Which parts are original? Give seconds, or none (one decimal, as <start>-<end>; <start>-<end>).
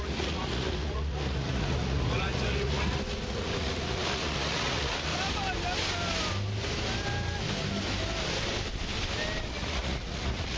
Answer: 5.1-9.5